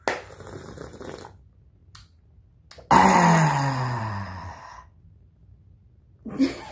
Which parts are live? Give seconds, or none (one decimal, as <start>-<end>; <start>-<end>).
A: 0.0-6.7

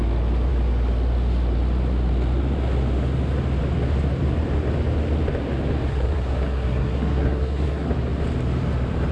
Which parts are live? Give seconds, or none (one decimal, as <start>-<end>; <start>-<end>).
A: 0.0-5.9; 7.9-9.1